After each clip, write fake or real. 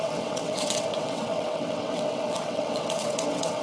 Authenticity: fake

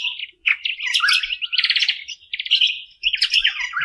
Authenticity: real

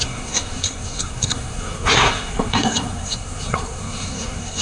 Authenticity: fake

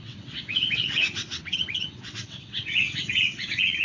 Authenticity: fake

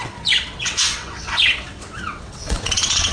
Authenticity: fake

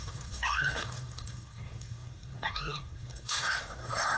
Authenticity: fake